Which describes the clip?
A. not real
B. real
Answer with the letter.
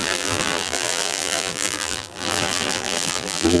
A